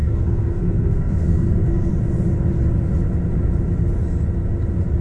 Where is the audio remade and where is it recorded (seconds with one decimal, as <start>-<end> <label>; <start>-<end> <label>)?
0.0-1.9 remade; 1.9-5.0 recorded